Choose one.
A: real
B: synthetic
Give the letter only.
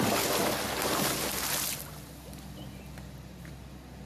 A